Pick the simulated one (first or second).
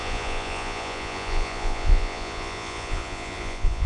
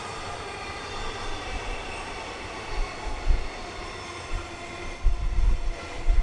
first